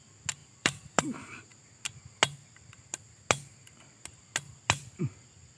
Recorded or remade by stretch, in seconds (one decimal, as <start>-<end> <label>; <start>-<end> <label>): 0.0-0.4 recorded; 0.4-1.0 remade; 1.0-5.6 recorded